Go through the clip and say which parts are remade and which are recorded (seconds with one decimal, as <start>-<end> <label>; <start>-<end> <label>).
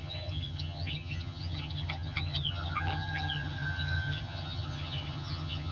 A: 0.0-5.7 remade